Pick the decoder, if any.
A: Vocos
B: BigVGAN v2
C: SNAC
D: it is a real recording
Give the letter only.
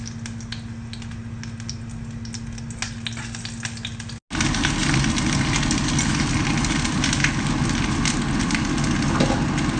D